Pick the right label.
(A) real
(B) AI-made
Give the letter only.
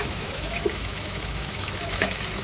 B